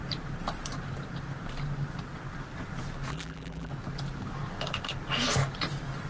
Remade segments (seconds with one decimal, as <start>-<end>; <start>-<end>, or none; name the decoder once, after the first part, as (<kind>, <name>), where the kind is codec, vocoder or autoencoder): 3.1-3.7 (vocoder, BigVGAN v2)